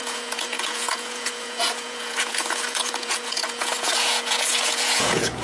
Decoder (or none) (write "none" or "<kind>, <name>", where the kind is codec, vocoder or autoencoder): vocoder, Vocos